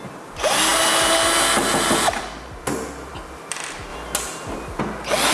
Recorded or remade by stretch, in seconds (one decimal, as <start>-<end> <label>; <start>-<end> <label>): 0.0-5.3 recorded